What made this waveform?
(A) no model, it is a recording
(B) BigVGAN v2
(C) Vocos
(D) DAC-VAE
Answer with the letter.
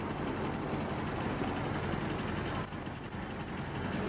A